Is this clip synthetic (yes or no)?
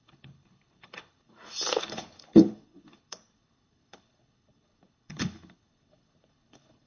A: yes